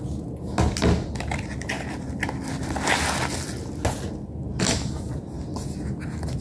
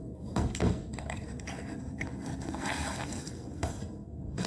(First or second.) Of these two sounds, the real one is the first